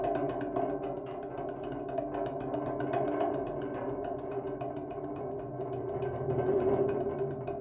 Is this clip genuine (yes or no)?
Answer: yes